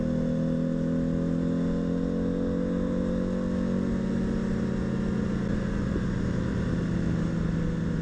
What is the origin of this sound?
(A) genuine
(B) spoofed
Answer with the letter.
A